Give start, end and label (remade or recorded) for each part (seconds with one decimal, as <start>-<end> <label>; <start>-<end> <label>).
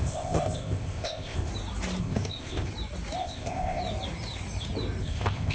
0.0-1.5 remade; 1.5-2.0 recorded; 2.0-2.7 remade; 2.7-3.2 recorded; 3.2-3.8 remade; 3.8-5.0 recorded; 5.0-5.5 remade